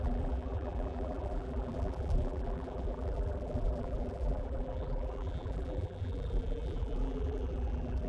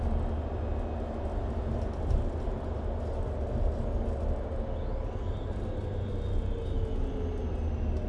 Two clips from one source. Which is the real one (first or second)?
second